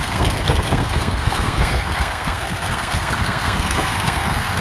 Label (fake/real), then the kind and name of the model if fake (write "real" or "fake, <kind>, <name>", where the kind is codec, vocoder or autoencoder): fake, codec, SNAC